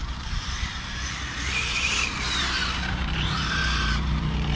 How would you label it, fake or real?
fake